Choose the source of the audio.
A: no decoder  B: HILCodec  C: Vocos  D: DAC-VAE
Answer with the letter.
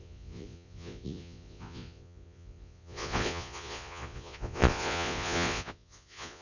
C